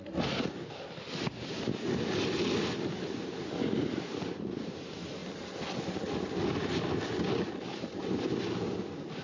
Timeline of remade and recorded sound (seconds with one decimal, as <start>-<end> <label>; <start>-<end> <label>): 0.0-9.2 recorded